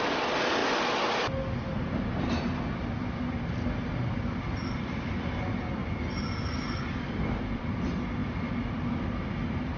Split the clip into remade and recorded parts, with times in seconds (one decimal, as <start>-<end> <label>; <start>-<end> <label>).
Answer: 0.0-9.8 recorded